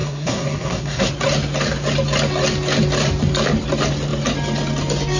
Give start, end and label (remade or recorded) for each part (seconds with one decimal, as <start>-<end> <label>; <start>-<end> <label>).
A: 0.0-1.1 remade; 1.1-5.2 recorded